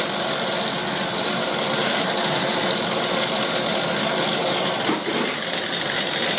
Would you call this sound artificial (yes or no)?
no